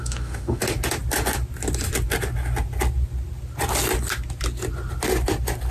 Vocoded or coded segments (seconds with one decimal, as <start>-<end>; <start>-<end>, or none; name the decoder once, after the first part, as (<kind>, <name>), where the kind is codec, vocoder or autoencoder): 0.0-0.6 (autoencoder, DAC-VAE)